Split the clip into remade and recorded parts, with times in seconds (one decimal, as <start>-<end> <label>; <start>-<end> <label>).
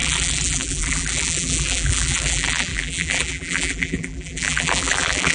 0.0-5.3 remade